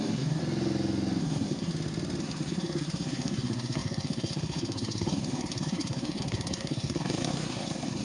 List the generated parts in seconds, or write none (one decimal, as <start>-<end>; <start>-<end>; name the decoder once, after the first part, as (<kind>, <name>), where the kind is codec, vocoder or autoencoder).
0.0-0.4 (codec, SNAC); 1.2-1.7; 2.2-8.0